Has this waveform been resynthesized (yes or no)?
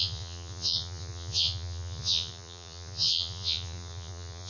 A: yes